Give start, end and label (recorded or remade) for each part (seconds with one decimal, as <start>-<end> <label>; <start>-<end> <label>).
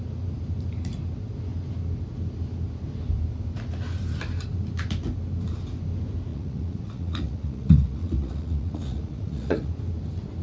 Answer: 0.0-6.3 recorded; 6.3-9.7 remade; 9.7-10.4 recorded